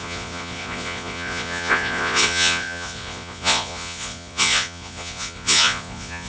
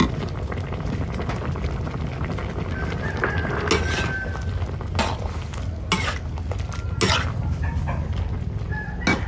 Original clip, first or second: second